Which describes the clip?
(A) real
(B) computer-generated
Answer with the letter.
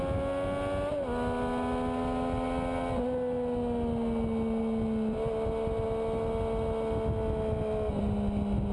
A